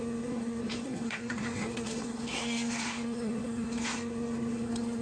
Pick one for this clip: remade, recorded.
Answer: remade